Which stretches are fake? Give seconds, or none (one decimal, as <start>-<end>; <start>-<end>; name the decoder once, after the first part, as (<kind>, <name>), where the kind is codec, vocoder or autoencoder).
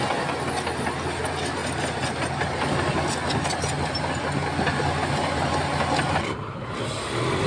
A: none